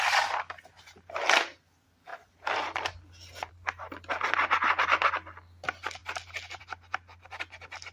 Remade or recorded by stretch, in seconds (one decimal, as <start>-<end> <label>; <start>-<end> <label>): 0.0-7.9 recorded